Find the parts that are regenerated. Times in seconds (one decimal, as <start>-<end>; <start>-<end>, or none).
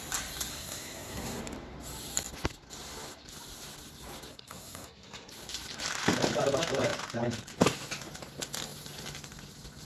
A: 0.5-1.4; 4.3-5.3